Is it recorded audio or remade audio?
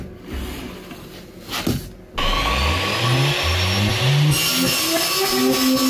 recorded